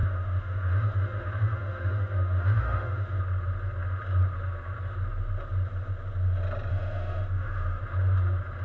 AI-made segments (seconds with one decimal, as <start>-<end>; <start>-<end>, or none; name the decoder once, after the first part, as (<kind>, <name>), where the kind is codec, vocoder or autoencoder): 0.0-3.2 (autoencoder, DAC-VAE); 6.7-7.8